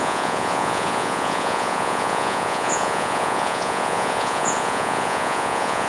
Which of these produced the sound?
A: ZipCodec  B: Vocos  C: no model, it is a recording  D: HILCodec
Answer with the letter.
B